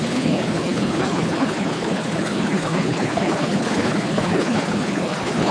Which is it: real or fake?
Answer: fake